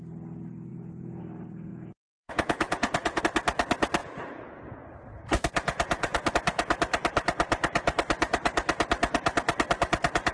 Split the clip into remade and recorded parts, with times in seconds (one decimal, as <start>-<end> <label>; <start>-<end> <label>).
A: 0.0-0.7 recorded; 0.7-1.2 remade; 1.2-1.7 recorded; 1.7-3.2 remade; 3.2-4.0 recorded; 4.0-6.3 remade; 6.3-10.3 recorded